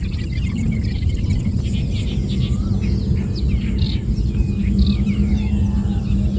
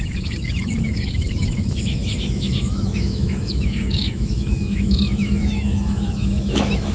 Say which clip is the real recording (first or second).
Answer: first